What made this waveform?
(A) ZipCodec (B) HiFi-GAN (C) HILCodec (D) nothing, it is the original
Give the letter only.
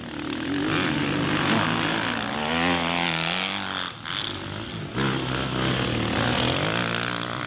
D